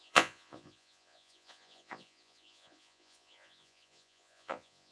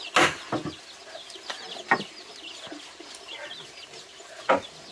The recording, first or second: second